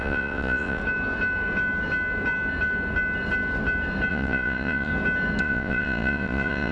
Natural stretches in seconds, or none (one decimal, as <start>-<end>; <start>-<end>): 0.8-4.1; 4.9-5.4